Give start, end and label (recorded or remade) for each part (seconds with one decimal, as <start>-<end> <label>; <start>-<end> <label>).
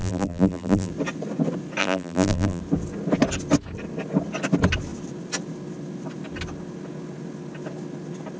0.0-0.9 remade; 0.9-1.8 recorded; 1.8-2.6 remade; 2.6-8.4 recorded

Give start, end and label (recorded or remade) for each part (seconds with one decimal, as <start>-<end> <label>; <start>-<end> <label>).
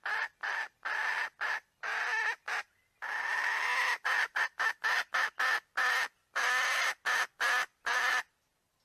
0.0-8.8 recorded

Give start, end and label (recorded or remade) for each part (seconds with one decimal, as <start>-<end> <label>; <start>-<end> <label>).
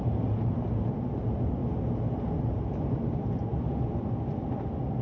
0.0-1.6 remade; 1.6-2.4 recorded; 2.4-3.5 remade; 3.5-5.0 recorded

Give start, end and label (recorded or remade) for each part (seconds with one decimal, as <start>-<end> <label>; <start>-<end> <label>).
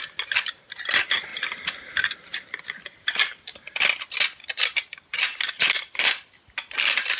0.0-7.2 recorded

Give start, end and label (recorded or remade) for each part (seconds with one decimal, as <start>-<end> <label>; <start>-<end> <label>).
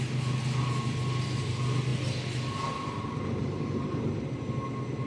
0.0-3.4 recorded; 3.4-4.2 remade; 4.2-5.1 recorded